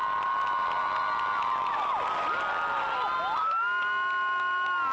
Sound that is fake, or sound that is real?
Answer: real